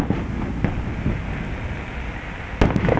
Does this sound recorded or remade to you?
recorded